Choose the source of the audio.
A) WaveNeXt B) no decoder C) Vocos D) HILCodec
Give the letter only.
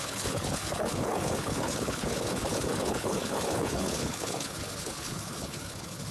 D